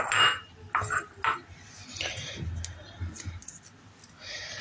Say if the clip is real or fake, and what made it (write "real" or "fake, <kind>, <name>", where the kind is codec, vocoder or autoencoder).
real